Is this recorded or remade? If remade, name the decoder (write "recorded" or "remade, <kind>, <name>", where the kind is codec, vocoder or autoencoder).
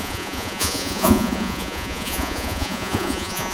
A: remade, vocoder, Vocos